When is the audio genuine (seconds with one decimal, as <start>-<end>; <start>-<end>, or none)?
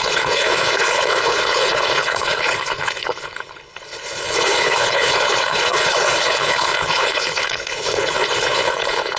none